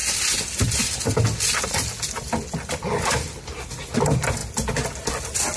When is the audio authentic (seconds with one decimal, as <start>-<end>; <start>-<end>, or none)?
0.0-5.6